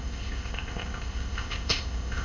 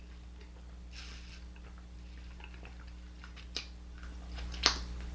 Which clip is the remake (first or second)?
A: first